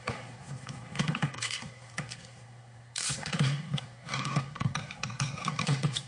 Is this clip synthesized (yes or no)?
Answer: yes